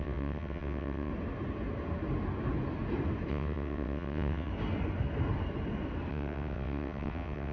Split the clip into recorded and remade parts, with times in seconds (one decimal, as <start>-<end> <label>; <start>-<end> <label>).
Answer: 0.0-1.1 remade; 1.1-3.3 recorded; 3.3-4.5 remade; 4.5-6.1 recorded; 6.1-7.5 remade